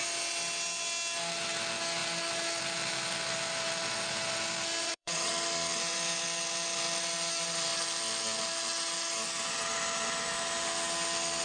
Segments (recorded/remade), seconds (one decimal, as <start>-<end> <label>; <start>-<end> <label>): 0.0-4.8 recorded; 4.8-5.3 remade; 5.3-11.4 recorded